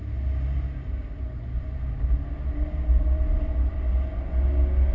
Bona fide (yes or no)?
yes